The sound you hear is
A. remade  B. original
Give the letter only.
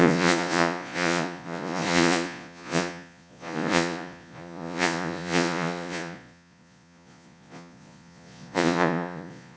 A